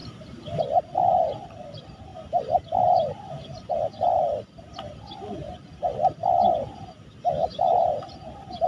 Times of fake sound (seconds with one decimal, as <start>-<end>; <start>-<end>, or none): 0.6-4.2; 8.1-8.7